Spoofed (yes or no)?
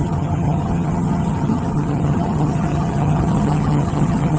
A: yes